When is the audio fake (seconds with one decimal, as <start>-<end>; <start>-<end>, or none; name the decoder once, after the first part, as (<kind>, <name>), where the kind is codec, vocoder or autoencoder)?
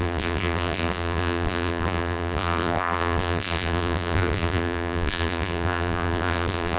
0.0-6.8 (vocoder, BigVGAN v2)